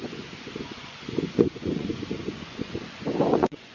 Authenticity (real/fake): fake